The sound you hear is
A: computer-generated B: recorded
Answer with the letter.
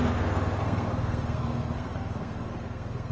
A